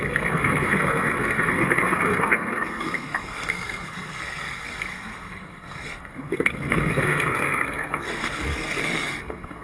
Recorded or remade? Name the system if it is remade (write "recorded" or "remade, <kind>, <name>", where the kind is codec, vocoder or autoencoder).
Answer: remade, codec, SNAC